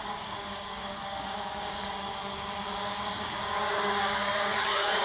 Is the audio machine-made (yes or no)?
yes